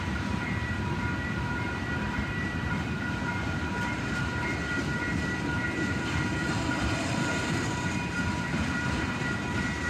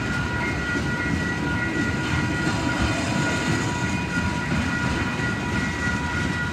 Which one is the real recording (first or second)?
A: second